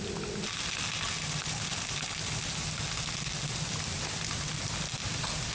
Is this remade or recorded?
recorded